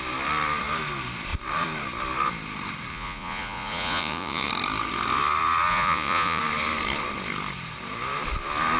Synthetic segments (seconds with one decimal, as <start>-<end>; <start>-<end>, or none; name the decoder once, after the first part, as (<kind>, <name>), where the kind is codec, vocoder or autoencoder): 2.9-4.5 (vocoder, Vocos); 5.7-6.4